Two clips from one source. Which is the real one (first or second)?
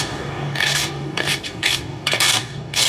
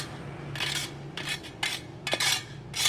second